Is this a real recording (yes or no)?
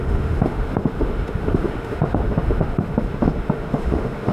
no